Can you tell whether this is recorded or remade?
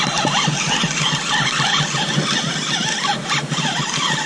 recorded